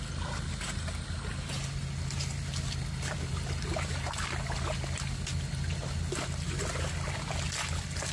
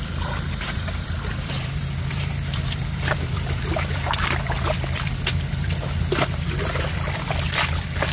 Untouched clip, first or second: first